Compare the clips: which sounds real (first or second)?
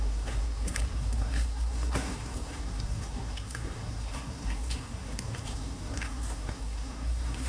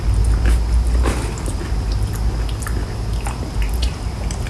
second